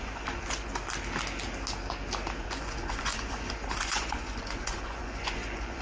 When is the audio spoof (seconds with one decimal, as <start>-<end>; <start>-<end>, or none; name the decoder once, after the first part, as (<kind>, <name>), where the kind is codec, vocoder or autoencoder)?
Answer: 0.0-0.7 (vocoder, Vocos); 2.4-5.8